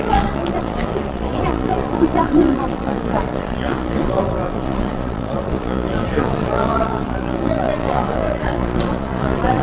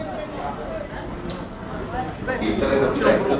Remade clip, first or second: first